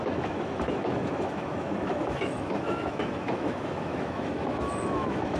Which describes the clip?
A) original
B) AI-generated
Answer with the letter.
B